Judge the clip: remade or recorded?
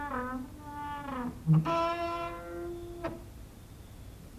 recorded